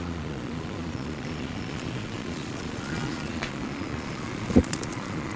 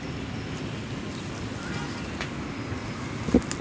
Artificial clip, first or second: first